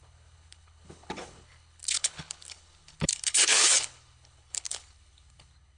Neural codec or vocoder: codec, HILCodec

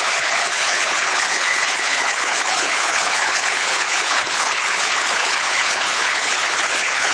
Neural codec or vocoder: codec, HILCodec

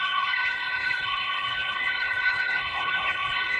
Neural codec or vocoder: codec, HILCodec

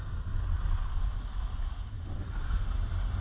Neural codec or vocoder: none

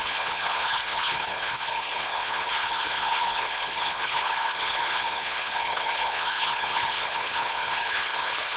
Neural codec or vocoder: codec, HILCodec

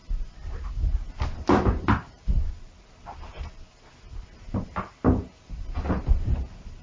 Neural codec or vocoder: none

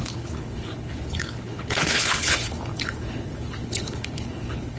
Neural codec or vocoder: codec, HILCodec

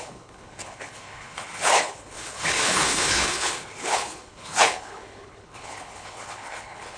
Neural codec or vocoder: codec, HILCodec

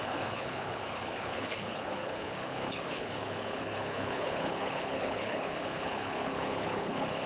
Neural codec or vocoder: codec, HILCodec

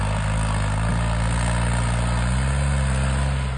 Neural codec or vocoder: none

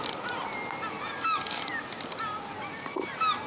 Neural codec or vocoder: none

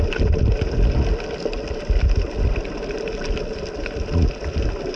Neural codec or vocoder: none